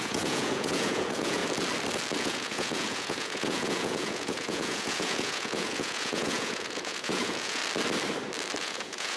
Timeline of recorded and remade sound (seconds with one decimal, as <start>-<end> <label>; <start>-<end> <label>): 0.0-1.4 remade; 1.4-2.2 recorded; 2.2-7.6 remade; 7.6-8.6 recorded; 8.6-9.2 remade